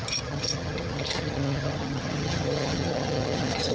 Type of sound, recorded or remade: remade